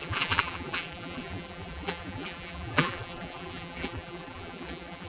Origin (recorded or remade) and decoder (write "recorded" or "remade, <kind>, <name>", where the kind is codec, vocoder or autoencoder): remade, vocoder, BigVGAN v2